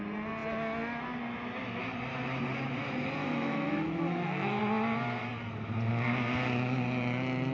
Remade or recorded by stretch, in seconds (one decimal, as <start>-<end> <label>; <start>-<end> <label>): 0.0-3.2 recorded; 3.2-4.6 remade; 4.6-7.5 recorded

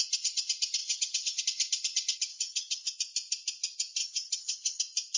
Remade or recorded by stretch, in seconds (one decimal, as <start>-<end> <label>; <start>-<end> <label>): 0.0-0.8 recorded; 0.8-1.4 remade; 1.4-2.3 recorded; 2.3-2.9 remade; 2.9-4.0 recorded; 4.0-4.8 remade; 4.8-5.2 recorded